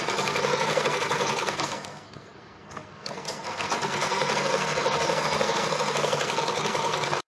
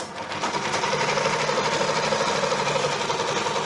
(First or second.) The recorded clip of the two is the second